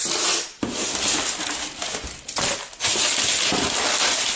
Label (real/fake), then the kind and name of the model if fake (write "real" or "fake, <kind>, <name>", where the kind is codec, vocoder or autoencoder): real